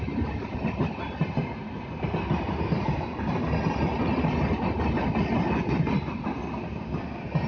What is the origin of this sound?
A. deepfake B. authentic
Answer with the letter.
B